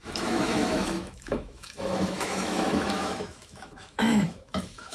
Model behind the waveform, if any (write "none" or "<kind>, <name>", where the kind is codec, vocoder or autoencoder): autoencoder, DAC-VAE